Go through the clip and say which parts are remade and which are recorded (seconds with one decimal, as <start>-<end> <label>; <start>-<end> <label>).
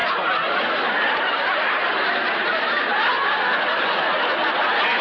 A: 0.0-3.0 remade; 3.0-5.0 recorded